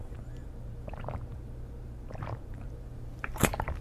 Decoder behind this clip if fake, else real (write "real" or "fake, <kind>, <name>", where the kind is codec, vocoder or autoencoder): fake, vocoder, BigVGAN v2